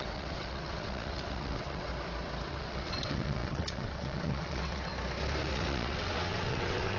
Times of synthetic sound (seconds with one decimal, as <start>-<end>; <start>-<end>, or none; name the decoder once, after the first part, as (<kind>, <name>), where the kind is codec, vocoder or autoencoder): 0.0-1.9 (vocoder, WaveNeXt); 2.5-4.9; 5.5-7.0